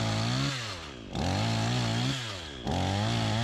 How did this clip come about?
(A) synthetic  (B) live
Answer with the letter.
B